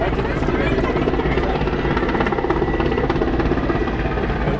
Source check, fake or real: real